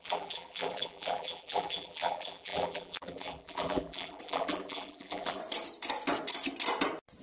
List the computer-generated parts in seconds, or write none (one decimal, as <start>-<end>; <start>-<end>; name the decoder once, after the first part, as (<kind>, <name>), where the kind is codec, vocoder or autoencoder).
0.0-5.4 (vocoder, BigVGAN v2)